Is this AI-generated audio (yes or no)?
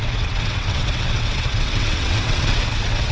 yes